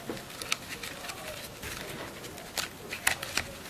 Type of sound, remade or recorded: recorded